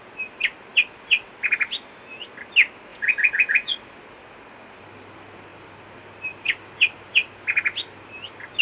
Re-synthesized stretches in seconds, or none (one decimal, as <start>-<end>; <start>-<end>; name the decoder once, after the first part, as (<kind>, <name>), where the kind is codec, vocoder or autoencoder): 2.9-3.7 (vocoder, Vocos)